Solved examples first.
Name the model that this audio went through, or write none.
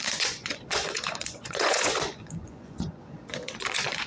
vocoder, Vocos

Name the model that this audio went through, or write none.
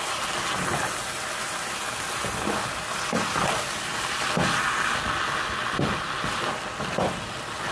none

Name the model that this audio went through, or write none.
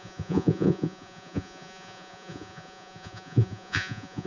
vocoder, Vocos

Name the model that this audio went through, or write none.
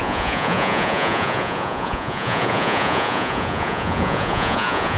vocoder, Vocos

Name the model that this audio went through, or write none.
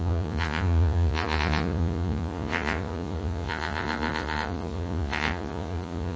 vocoder, Vocos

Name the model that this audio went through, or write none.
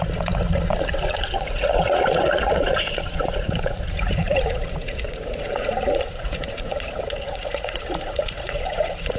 vocoder, Vocos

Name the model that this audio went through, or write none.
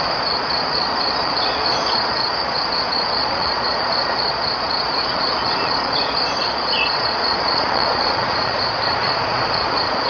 vocoder, Vocos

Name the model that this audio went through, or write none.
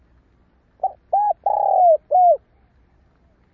none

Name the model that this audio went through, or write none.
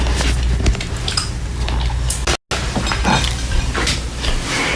none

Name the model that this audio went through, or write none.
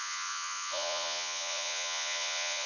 vocoder, Vocos